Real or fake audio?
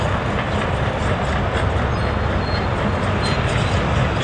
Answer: real